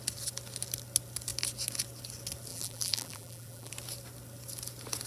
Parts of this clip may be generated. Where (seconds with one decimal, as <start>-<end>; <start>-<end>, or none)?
2.5-3.7

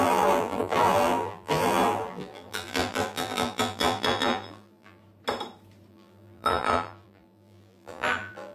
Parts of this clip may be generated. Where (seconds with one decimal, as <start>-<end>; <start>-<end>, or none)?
0.0-5.0; 5.9-8.5

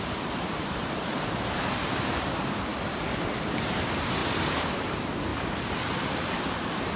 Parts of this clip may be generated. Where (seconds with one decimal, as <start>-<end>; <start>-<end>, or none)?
0.0-2.7; 3.6-5.3; 6.6-7.0

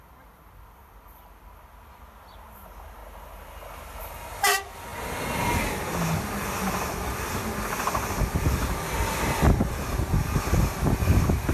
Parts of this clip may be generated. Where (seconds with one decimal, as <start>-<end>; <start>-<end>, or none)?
none

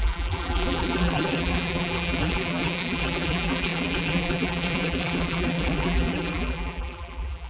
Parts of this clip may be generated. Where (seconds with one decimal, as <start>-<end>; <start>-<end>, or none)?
0.0-7.5